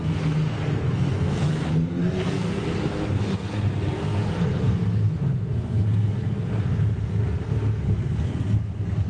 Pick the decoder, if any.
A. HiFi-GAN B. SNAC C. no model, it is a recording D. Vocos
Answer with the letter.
B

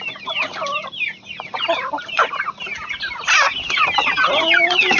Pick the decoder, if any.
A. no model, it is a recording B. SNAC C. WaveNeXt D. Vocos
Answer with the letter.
A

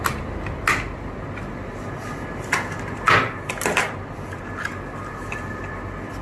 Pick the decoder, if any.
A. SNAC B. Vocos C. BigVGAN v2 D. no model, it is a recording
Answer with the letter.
D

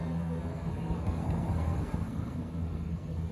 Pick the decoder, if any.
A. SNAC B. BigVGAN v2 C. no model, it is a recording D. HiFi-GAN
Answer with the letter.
A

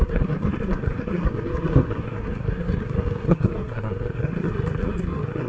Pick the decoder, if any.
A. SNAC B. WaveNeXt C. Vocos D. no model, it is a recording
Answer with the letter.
A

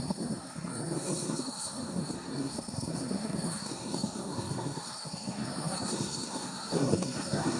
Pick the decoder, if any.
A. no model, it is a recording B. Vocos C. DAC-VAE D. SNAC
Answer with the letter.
D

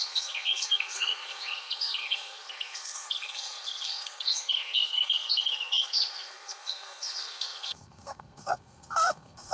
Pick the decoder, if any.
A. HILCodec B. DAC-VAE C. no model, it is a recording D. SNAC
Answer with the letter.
D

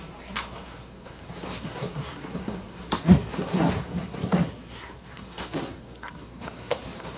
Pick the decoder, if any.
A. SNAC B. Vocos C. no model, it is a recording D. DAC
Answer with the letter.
A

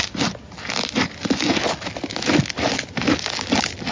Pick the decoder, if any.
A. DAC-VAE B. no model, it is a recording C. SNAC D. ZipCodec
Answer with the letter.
B